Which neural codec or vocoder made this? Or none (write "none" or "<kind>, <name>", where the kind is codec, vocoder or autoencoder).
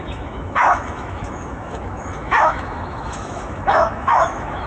autoencoder, DAC-VAE